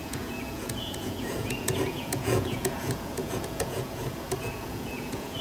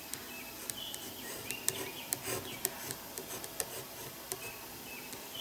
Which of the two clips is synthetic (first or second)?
first